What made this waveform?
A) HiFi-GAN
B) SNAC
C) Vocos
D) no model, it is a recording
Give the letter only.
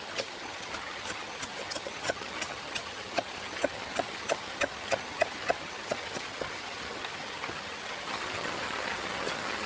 A